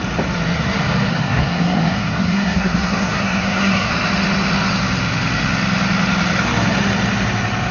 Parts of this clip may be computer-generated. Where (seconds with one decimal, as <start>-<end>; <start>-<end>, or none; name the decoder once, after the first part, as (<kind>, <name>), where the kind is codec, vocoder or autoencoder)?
1.1-3.9 (codec, SNAC)